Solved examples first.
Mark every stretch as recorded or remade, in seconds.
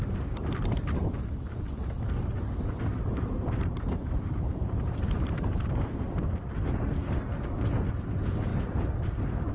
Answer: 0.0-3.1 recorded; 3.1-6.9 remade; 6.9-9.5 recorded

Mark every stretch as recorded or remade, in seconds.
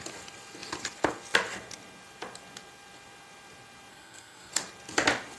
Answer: 0.0-3.9 recorded; 3.9-4.5 remade; 4.5-5.4 recorded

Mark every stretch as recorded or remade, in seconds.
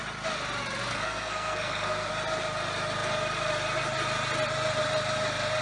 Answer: 0.0-0.9 recorded; 0.9-2.1 remade; 2.1-5.6 recorded